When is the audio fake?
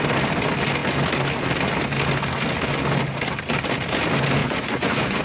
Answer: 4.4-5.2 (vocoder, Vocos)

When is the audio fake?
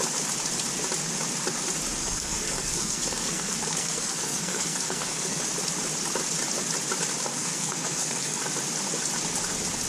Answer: 2.0-5.4 (codec, SNAC); 7.3-8.4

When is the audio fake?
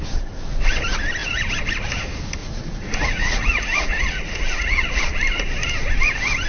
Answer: 2.4-5.0 (vocoder, Vocos)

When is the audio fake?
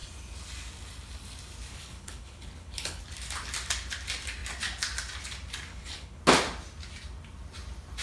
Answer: 1.7-3.0 (codec, HILCodec); 5.7-6.2